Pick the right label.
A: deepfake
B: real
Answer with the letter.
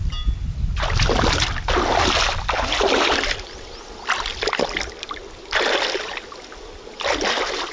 B